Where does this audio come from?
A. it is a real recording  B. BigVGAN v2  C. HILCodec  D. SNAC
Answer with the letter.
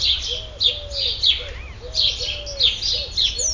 A